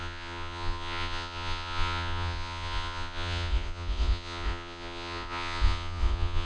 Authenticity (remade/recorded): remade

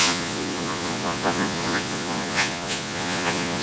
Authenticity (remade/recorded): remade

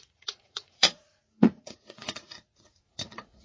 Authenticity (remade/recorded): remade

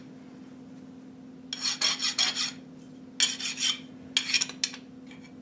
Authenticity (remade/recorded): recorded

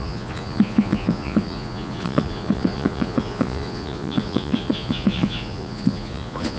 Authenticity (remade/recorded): remade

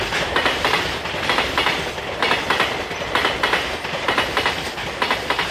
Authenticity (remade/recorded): recorded